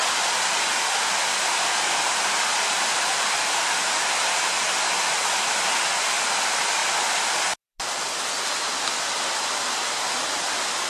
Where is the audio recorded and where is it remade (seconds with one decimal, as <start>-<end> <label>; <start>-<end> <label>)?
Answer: 0.0-10.9 recorded